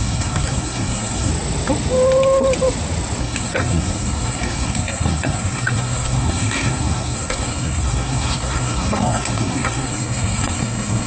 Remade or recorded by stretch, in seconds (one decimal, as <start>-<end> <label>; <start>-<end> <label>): 0.0-1.3 remade; 1.3-3.2 recorded; 3.2-11.1 remade

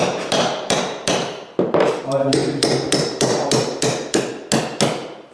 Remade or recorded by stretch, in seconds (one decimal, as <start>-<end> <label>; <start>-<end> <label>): 0.0-2.4 remade; 2.4-3.0 recorded; 3.0-4.3 remade; 4.3-5.3 recorded